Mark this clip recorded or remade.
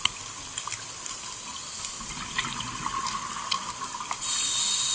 recorded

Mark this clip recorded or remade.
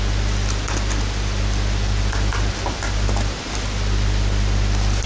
recorded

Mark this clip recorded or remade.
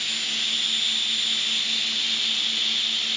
recorded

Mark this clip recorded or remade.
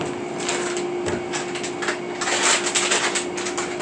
recorded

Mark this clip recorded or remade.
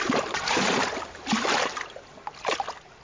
recorded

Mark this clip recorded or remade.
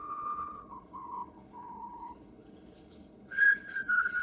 remade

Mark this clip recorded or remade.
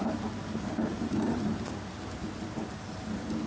recorded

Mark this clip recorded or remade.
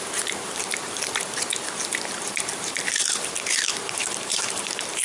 remade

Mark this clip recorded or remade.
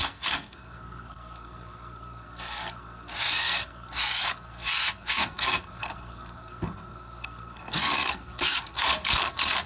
remade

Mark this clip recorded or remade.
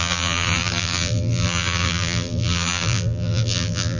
remade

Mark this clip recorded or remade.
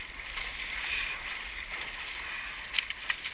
recorded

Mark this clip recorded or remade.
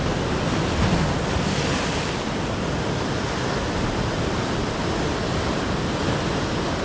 recorded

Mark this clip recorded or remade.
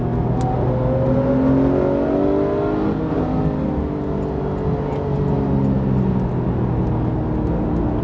recorded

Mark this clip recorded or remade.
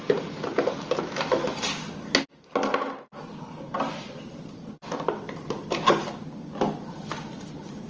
recorded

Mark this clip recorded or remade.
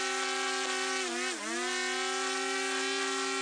recorded